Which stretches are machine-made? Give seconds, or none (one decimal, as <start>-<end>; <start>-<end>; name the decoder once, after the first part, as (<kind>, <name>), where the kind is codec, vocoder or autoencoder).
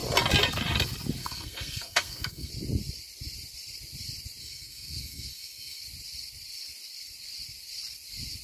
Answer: 1.2-2.5 (codec, SNAC); 4.4-5.8